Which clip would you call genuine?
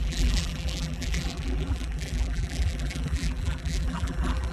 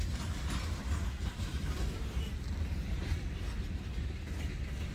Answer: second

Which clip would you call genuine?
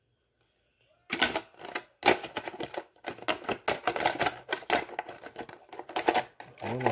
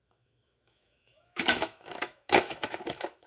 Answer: first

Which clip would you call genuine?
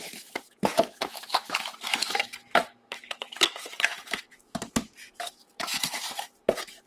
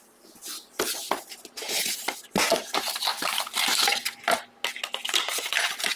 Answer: second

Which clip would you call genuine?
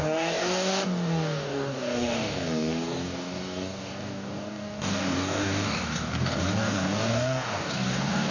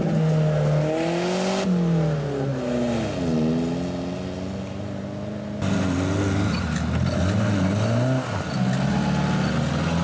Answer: second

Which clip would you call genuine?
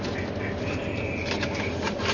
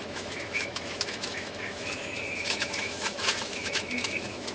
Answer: first